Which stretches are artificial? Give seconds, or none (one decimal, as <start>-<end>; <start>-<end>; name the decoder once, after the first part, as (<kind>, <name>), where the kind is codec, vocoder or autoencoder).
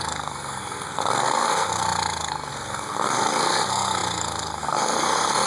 0.0-5.5 (codec, SNAC)